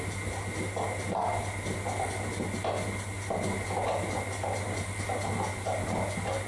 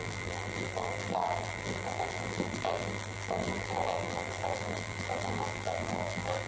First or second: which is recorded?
first